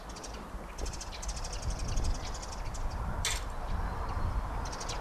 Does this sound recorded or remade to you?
recorded